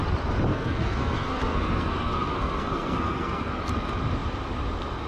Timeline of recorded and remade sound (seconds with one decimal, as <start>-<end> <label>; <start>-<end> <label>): 0.0-0.5 recorded; 0.5-3.6 remade; 3.6-5.1 recorded